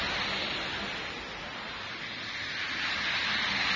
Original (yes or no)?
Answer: yes